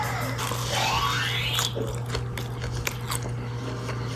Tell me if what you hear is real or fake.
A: real